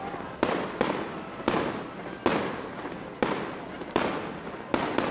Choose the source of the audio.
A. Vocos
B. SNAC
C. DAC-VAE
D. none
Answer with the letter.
D